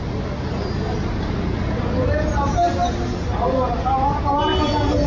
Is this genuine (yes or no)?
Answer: yes